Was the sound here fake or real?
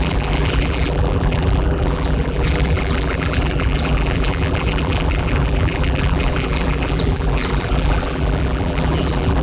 fake